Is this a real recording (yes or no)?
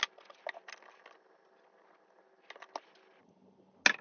yes